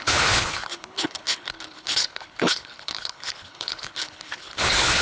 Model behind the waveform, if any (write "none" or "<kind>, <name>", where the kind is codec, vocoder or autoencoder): codec, HILCodec